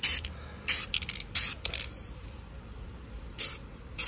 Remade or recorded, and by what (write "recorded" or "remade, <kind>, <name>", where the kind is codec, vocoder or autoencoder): recorded